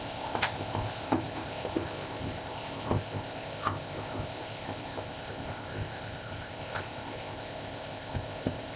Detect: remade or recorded remade